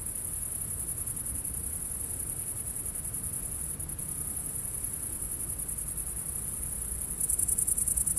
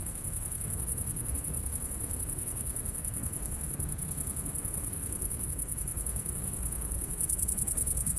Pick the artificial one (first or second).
second